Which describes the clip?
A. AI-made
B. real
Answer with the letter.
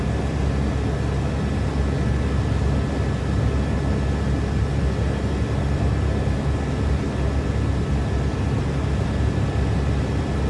B